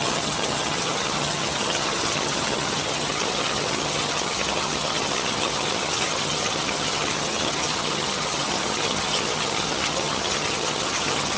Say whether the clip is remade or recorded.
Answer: remade